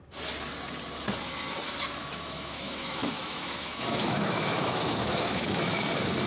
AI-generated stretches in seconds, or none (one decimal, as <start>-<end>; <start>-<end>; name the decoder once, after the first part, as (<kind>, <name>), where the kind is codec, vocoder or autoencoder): 2.0-5.8 (autoencoder, DAC-VAE)